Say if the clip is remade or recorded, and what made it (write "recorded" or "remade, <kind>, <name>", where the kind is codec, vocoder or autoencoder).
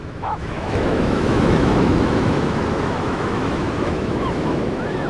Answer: remade, autoencoder, DAC-VAE